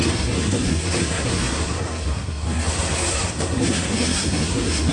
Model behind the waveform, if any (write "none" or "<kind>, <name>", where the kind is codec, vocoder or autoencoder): codec, SNAC